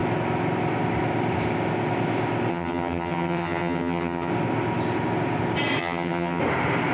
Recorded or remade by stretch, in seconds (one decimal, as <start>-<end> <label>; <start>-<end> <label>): 0.0-2.5 recorded; 2.5-4.3 remade; 4.3-5.8 recorded; 5.8-6.4 remade; 6.4-6.9 recorded